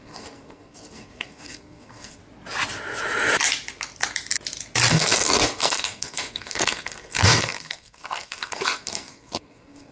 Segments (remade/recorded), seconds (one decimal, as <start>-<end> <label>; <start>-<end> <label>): 0.0-2.2 remade; 2.2-4.9 recorded; 4.9-9.9 remade